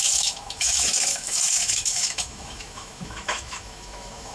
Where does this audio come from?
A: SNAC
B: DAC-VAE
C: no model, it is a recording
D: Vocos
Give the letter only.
B